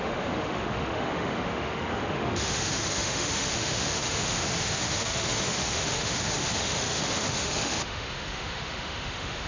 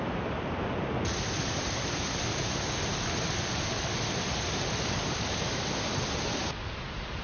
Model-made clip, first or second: first